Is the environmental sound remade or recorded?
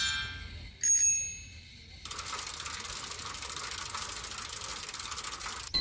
recorded